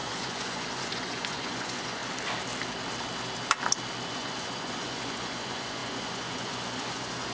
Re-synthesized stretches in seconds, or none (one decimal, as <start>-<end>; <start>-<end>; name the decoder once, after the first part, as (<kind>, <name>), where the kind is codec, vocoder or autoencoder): 0.0-2.0 (vocoder, Vocos); 4.1-7.3